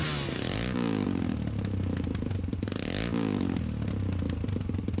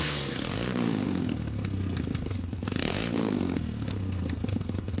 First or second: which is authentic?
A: first